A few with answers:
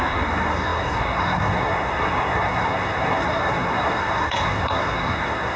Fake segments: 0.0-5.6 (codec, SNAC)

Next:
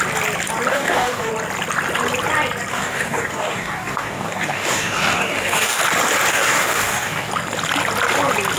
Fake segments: 0.7-1.3 (codec, DAC); 2.7-5.8; 6.3-7.3

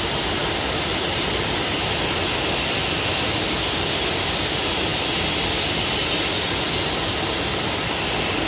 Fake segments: none

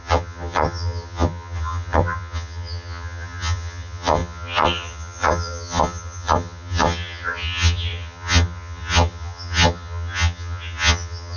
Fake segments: 0.0-11.4 (vocoder, HiFi-GAN)

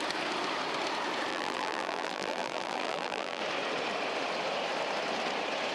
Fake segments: 1.3-3.4 (vocoder, BigVGAN v2)

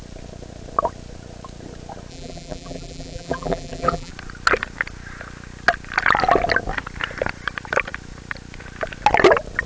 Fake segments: 2.1-4.1 (vocoder, BigVGAN v2)

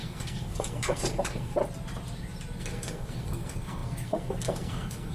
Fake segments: 0.0-1.6 (codec, SNAC); 2.6-5.1

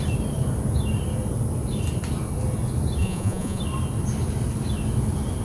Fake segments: 3.0-3.6 (vocoder, Vocos)